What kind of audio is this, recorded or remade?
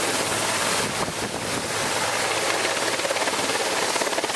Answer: recorded